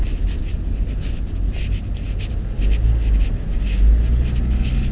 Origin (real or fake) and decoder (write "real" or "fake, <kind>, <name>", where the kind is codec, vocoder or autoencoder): real